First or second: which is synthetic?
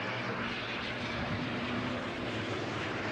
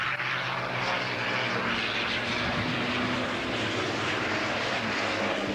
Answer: first